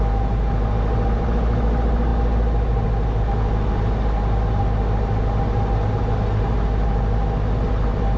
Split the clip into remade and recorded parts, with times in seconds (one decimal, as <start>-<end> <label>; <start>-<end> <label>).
0.0-8.2 recorded